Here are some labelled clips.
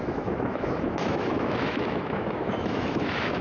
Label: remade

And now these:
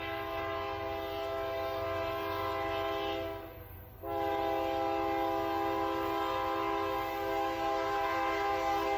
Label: recorded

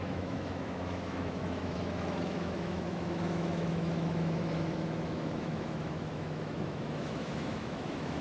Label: remade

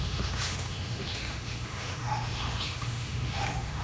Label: remade